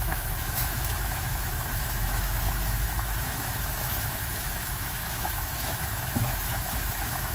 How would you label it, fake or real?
fake